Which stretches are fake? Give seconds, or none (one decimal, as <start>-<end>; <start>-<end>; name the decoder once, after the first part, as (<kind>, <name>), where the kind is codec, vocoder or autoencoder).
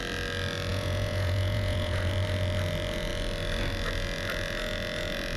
0.7-2.1 (vocoder, Vocos)